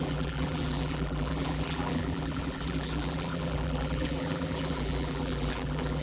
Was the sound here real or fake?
fake